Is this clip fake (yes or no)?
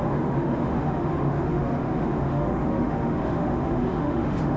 yes